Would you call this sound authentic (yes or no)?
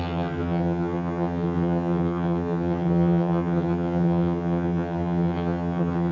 no